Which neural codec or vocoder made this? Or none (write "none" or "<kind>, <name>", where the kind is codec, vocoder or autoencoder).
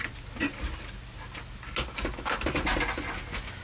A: none